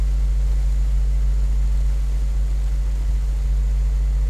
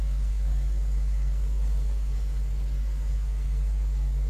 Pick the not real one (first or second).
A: second